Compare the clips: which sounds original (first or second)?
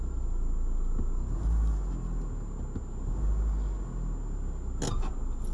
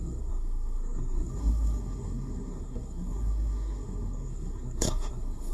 first